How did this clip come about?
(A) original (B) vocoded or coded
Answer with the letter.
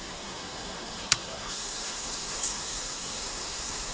B